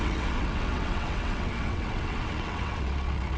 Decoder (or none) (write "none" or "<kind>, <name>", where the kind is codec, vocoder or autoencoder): vocoder, WaveNeXt